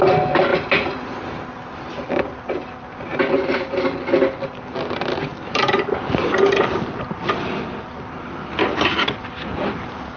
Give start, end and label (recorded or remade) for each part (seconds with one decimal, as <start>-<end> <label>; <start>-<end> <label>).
0.0-0.5 recorded; 0.5-3.2 remade; 3.2-5.3 recorded; 5.3-8.5 remade; 8.5-10.2 recorded